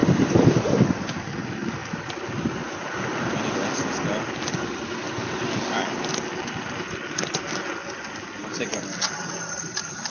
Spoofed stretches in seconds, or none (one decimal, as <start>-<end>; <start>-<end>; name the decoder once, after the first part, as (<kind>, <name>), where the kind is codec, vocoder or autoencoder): 0.0-0.8 (vocoder, BigVGAN v2)